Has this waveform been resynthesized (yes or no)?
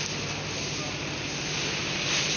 no